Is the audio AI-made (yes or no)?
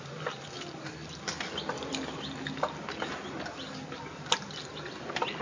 no